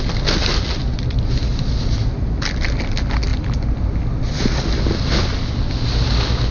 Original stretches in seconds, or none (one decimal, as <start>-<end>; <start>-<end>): 0.0-6.5